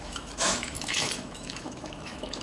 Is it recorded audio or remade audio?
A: remade